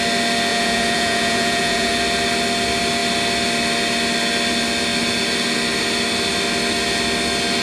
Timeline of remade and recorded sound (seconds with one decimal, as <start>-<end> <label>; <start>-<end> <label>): 0.0-0.5 recorded; 0.5-1.9 remade; 1.9-7.6 recorded

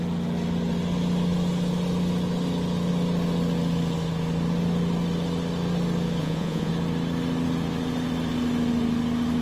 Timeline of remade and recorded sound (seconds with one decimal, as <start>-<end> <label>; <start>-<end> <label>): 0.0-6.2 recorded; 6.2-6.7 remade; 6.7-9.4 recorded

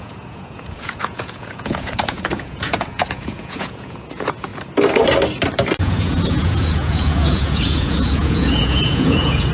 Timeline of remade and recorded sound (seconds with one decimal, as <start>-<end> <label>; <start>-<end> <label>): 0.0-4.5 remade; 4.5-5.8 recorded; 5.8-9.5 remade

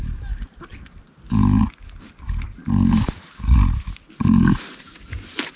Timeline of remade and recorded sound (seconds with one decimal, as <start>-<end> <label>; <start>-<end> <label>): 0.0-5.6 recorded

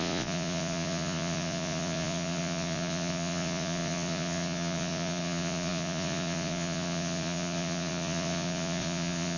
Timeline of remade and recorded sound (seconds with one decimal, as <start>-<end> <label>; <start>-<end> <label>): 0.0-9.4 remade

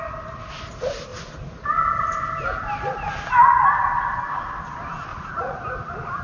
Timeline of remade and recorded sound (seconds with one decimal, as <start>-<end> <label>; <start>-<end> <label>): 0.0-5.1 recorded; 5.1-5.6 remade; 5.6-6.2 recorded